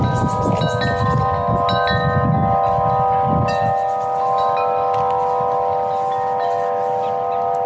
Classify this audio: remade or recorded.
recorded